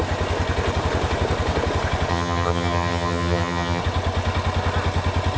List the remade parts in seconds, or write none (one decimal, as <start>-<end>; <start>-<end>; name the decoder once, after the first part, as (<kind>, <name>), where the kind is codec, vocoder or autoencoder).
2.1-3.8 (vocoder, HiFi-GAN)